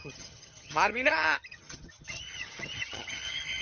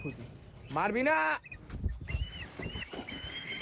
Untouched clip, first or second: second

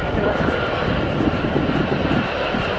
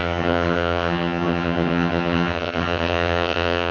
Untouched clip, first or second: first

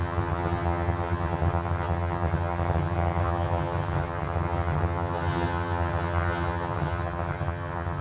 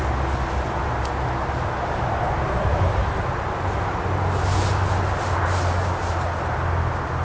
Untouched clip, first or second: second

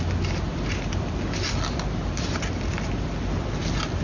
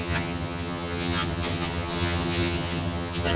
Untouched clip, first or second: first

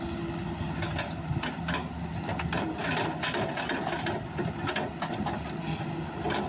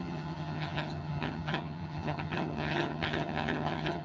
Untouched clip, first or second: first